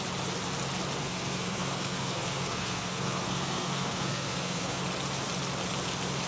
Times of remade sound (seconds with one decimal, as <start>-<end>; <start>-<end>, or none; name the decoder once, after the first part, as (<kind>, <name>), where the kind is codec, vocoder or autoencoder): 1.0-4.8 (codec, SNAC)